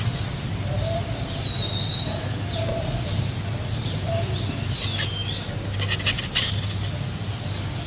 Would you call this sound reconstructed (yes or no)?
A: no